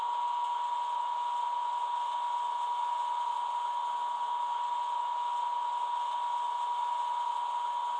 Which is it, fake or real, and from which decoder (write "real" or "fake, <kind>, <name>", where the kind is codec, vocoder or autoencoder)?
real